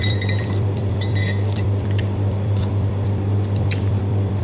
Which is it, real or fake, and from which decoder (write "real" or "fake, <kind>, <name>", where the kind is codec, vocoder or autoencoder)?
fake, vocoder, BigVGAN v2